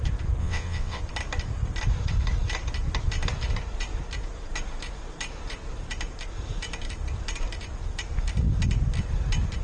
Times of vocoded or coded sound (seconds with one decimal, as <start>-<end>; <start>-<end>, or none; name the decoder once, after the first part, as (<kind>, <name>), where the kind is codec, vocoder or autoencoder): 0.4-1.0 (vocoder, WaveNeXt)